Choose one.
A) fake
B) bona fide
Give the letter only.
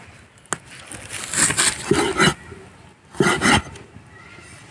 B